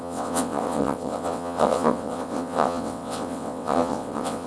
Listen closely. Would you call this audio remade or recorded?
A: remade